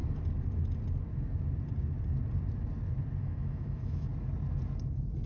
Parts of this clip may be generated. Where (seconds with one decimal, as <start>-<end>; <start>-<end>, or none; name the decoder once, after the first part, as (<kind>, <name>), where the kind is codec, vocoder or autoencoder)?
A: 3.2-4.1 (autoencoder, DAC-VAE)